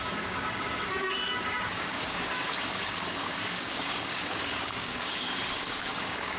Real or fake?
fake